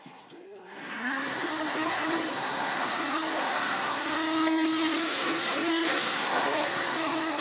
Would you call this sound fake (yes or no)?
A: yes